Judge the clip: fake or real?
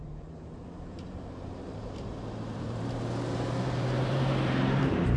fake